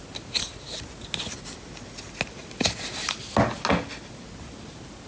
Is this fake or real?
real